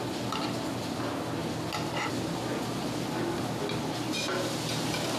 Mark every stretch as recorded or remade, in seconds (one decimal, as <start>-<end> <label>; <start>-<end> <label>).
0.0-5.2 recorded